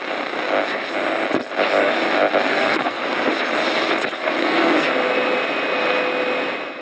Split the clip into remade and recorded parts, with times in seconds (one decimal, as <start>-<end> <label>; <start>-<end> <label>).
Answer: 0.0-2.5 recorded; 2.5-3.3 remade; 3.3-4.4 recorded; 4.4-4.9 remade; 4.9-6.8 recorded